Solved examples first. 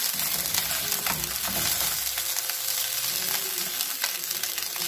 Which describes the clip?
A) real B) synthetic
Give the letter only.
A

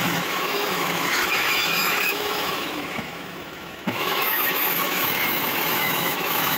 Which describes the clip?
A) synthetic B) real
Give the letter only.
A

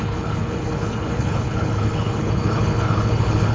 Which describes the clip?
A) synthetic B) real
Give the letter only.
A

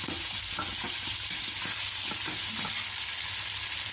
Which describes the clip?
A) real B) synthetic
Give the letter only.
A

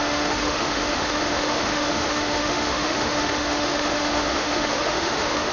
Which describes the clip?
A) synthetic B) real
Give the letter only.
A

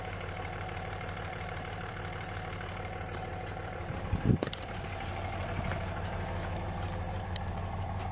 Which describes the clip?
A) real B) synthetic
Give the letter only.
B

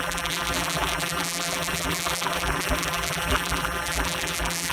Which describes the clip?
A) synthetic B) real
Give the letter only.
A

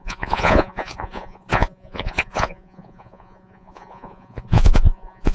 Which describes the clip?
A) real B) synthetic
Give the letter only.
B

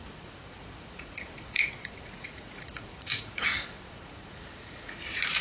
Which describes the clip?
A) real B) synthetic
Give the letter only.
B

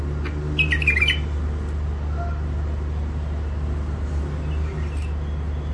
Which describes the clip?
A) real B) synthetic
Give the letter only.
A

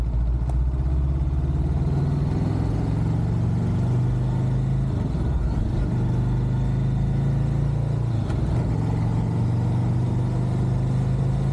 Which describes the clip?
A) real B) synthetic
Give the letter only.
A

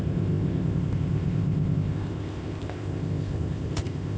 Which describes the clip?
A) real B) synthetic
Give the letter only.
B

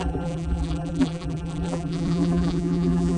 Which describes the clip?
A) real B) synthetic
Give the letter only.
B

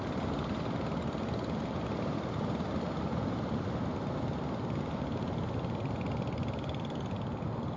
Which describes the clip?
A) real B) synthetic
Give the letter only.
B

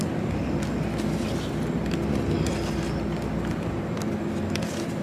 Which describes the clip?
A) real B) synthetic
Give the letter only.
A